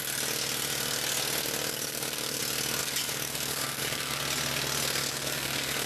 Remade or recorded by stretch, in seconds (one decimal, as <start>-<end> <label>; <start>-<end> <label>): 0.0-1.7 recorded; 1.7-2.4 remade; 2.4-2.8 recorded; 2.8-4.2 remade; 4.2-5.0 recorded; 5.0-5.9 remade